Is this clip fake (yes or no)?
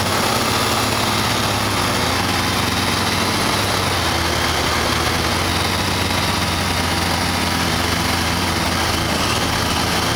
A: no